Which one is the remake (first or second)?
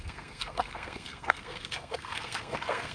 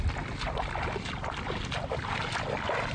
first